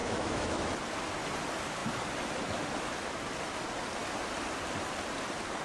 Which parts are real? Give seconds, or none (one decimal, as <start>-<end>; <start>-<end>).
0.7-5.6